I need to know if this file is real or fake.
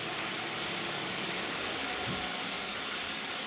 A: fake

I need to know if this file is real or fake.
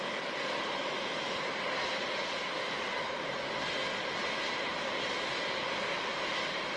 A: real